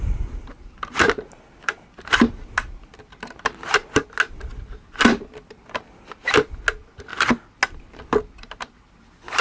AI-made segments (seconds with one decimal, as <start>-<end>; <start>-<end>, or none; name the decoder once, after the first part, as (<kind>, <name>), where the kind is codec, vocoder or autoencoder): none